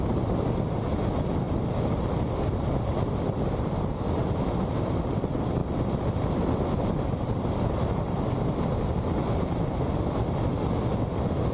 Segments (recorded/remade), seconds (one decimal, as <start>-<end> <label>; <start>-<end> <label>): 0.0-11.5 recorded